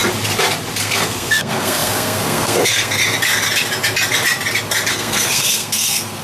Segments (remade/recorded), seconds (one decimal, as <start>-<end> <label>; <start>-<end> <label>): 0.0-0.8 recorded; 0.8-3.0 remade; 3.0-4.9 recorded; 4.9-6.2 remade